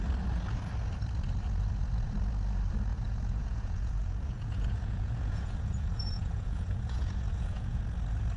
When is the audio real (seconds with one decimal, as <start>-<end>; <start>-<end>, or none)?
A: 0.0-2.9; 7.8-8.4